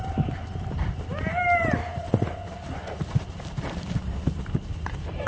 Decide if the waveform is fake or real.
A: fake